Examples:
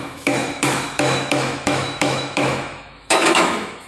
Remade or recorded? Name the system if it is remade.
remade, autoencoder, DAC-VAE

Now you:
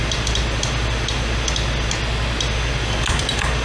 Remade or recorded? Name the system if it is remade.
recorded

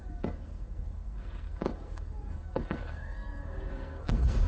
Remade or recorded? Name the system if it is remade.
remade, codec, SNAC